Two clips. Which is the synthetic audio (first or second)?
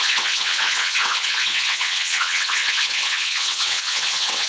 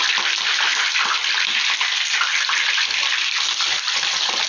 first